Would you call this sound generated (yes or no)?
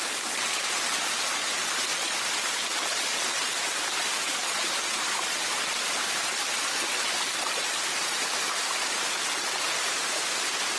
no